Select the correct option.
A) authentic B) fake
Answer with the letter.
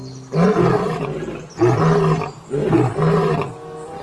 A